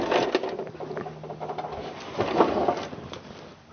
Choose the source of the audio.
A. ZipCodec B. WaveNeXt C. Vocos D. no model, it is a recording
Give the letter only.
D